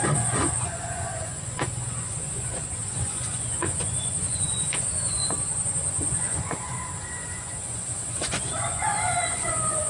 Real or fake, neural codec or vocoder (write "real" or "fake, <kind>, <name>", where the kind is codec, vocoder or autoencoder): fake, vocoder, Vocos